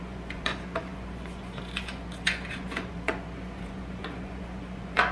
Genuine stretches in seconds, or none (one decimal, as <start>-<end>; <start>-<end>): none